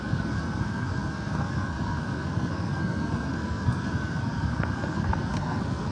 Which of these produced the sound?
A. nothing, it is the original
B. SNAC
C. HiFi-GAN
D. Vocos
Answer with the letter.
B